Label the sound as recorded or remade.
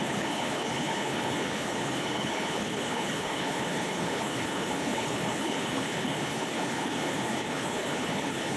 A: remade